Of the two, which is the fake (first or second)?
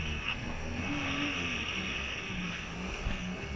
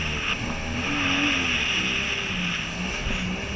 first